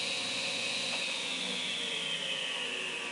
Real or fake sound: fake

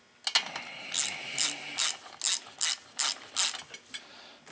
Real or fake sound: real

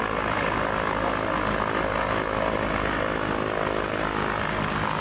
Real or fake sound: real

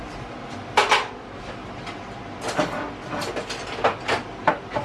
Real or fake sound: real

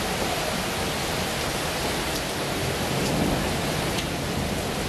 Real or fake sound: real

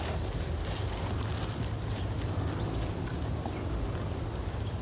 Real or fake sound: real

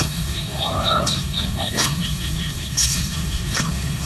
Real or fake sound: fake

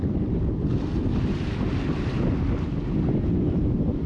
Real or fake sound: real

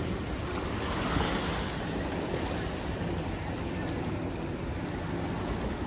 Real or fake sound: real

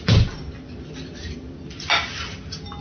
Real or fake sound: real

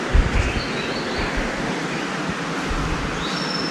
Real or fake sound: real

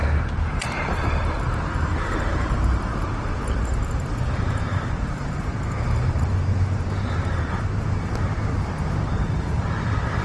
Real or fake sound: fake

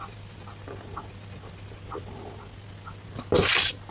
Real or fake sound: real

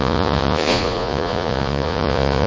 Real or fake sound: fake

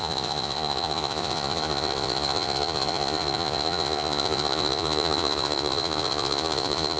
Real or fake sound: fake